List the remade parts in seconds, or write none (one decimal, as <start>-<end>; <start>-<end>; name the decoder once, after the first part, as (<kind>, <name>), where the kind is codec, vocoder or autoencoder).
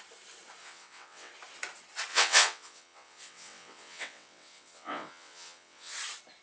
0.6-1.3 (vocoder, WaveNeXt); 2.1-5.9